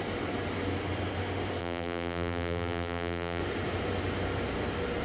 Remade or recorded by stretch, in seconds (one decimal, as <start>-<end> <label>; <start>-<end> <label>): 0.0-1.6 recorded; 1.6-3.4 remade; 3.4-5.0 recorded